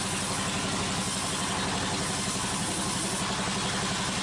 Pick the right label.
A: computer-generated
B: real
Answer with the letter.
B